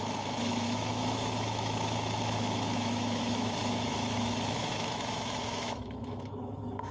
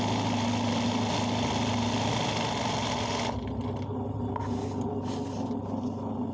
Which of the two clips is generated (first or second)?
first